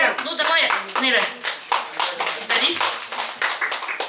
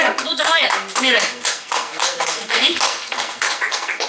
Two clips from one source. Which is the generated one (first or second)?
second